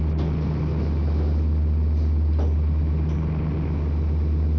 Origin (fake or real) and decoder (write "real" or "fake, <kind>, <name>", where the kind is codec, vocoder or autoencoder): real